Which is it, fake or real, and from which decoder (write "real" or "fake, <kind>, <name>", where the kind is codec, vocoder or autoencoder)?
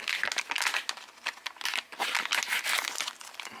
real